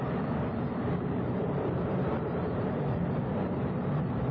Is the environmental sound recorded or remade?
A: remade